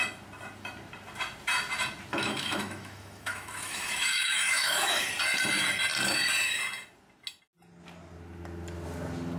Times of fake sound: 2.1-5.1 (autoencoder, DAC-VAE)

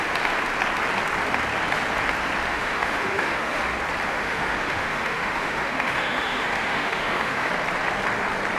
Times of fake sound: 2.5-3.6 (autoencoder, DAC-VAE); 4.1-7.5

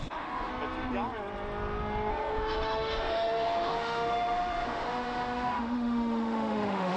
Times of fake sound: 0.0-0.5 (autoencoder, DAC-VAE); 2.1-7.0

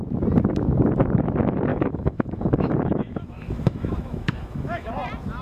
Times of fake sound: 1.7-4.9 (autoencoder, DAC-VAE)

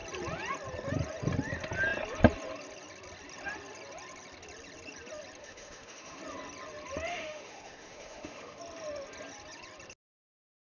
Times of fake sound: 5.4-6.2 (autoencoder, DAC-VAE); 7.1-8.6

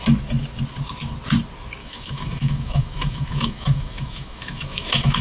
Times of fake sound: 1.8-5.2 (autoencoder, DAC-VAE)